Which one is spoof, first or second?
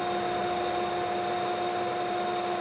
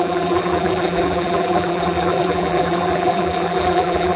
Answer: second